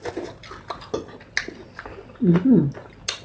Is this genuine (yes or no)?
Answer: yes